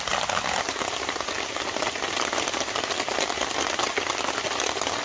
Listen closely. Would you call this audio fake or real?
real